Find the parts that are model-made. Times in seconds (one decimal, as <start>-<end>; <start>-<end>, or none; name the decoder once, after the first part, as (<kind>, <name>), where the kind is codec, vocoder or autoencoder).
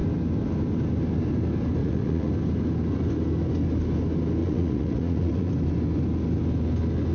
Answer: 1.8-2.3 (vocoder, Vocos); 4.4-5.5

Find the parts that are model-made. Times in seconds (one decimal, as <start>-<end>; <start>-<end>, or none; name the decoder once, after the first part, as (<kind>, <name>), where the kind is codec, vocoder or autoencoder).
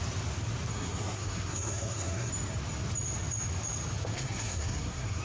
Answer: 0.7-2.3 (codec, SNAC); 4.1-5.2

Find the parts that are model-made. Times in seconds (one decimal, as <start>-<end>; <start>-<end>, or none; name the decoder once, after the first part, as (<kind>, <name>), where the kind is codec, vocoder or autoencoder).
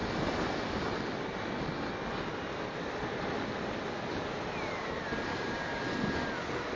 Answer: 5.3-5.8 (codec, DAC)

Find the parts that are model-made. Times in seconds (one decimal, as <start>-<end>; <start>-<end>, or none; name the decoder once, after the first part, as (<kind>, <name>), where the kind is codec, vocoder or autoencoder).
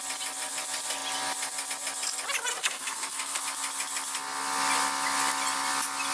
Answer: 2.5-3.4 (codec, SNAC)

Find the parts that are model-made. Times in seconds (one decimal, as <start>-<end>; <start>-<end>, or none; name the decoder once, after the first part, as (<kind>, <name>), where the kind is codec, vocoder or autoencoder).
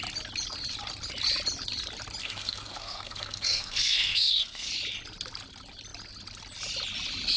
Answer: 2.2-4.7 (codec, SNAC)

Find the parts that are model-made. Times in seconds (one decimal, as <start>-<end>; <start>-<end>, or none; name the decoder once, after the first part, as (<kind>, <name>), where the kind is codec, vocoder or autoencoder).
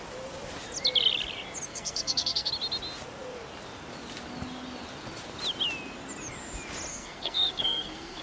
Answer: 1.7-2.5 (codec, SNAC); 6.9-8.2